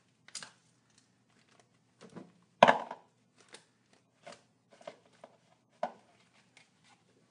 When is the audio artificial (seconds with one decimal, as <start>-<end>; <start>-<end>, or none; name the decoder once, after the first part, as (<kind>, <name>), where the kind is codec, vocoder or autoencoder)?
none